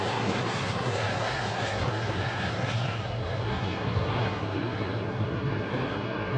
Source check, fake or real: fake